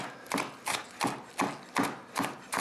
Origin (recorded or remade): recorded